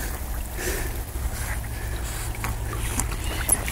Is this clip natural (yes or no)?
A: yes